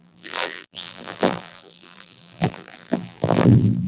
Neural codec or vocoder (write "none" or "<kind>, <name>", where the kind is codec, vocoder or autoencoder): vocoder, BigVGAN v2